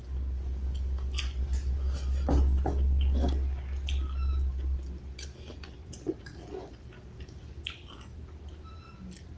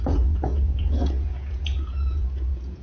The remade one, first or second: second